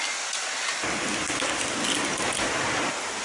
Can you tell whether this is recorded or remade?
recorded